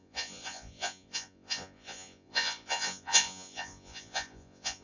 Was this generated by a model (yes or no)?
yes